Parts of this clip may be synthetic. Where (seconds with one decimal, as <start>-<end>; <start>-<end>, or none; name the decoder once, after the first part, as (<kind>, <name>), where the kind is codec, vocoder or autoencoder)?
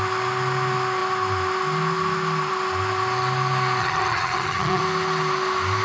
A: 3.8-4.8 (vocoder, HiFi-GAN)